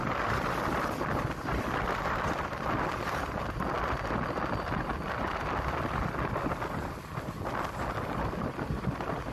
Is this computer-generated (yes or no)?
no